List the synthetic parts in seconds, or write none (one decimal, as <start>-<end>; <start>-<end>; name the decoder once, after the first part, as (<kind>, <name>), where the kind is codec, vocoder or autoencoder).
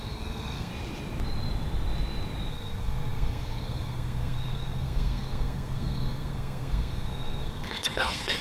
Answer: 0.0-0.7 (codec, SNAC); 2.5-8.4